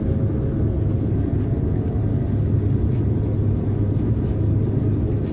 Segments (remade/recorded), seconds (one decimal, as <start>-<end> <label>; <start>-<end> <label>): 0.0-5.3 recorded